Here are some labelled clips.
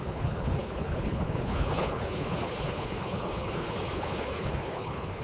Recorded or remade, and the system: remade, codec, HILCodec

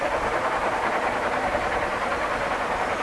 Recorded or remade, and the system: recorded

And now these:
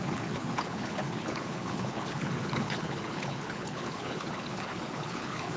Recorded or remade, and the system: remade, codec, HILCodec